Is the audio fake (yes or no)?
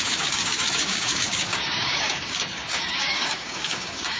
yes